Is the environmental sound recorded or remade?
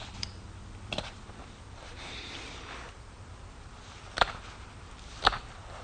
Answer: recorded